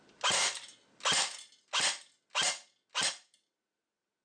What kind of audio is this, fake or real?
real